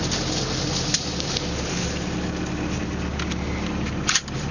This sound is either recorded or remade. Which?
recorded